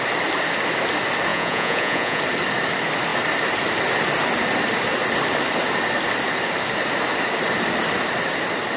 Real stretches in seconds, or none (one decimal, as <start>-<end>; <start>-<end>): 0.0-1.3; 2.2-8.8